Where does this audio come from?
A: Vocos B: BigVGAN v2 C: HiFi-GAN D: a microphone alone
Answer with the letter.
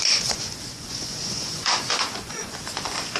A